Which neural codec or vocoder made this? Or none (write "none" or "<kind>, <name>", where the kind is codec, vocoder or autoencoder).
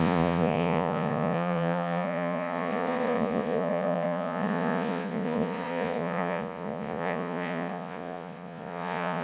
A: vocoder, Vocos